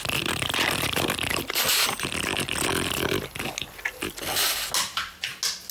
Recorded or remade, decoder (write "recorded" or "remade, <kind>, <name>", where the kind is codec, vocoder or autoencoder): recorded